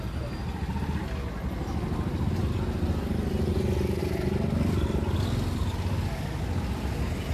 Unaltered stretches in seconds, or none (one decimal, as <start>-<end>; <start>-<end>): 0.0-7.3